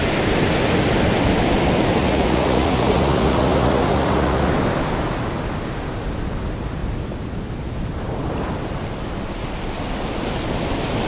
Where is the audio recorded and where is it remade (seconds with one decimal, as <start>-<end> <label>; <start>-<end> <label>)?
0.0-2.0 recorded; 2.0-4.5 remade; 4.5-11.1 recorded

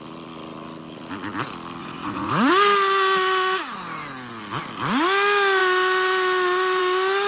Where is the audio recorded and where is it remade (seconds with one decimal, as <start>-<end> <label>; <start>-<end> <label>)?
0.0-1.8 recorded; 1.8-2.5 remade; 2.5-7.3 recorded

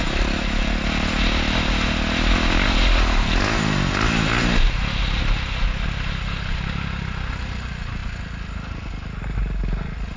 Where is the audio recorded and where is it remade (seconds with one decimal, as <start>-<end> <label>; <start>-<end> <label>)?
0.0-10.2 recorded

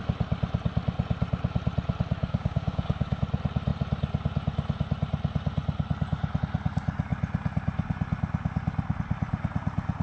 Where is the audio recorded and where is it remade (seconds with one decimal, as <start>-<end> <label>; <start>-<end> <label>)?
0.0-2.2 recorded; 2.2-3.2 remade; 3.2-10.0 recorded

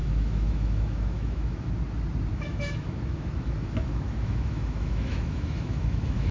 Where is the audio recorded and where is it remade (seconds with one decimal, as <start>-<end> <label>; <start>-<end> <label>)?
0.0-1.7 remade; 1.7-2.3 recorded; 2.3-6.3 remade

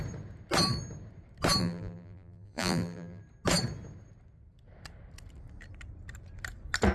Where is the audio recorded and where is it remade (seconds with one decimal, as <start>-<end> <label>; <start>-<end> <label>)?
0.0-1.6 recorded; 1.6-3.2 remade; 3.2-6.9 recorded

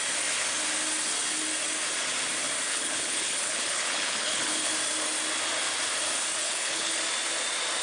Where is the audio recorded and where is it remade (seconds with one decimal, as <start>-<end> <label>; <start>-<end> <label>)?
0.0-2.7 recorded; 2.7-4.7 remade; 4.7-6.4 recorded; 6.4-7.0 remade; 7.0-7.8 recorded

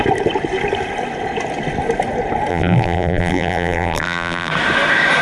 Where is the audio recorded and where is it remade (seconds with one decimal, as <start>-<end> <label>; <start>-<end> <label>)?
0.0-2.5 recorded; 2.5-4.5 remade; 4.5-5.2 recorded